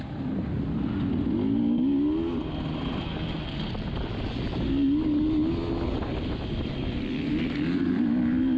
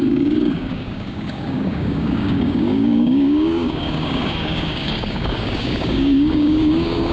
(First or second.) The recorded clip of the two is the first